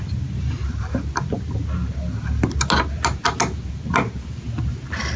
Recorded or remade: recorded